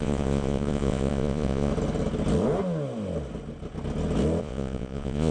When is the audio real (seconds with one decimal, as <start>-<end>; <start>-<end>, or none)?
1.7-4.4